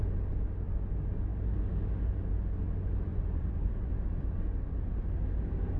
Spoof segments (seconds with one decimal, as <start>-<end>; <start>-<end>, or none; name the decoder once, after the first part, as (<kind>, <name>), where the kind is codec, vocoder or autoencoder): 3.1-3.9 (vocoder, Vocos)